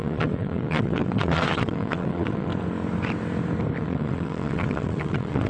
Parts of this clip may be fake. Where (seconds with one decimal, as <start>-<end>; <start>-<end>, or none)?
0.0-2.5; 3.8-5.5